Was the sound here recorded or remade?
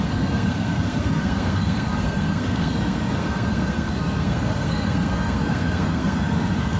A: remade